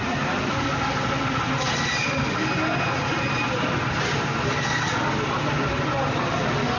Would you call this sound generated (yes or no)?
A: no